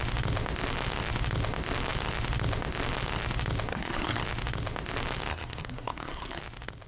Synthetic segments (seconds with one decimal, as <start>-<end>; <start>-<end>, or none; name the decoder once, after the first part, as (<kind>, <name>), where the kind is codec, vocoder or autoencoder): 3.7-4.2 (codec, SNAC); 5.3-6.4